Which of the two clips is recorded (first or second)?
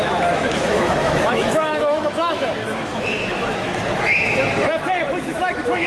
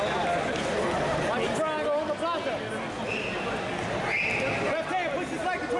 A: second